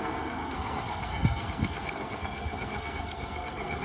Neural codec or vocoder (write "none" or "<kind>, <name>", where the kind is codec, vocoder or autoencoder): codec, SNAC